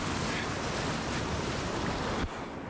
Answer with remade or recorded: recorded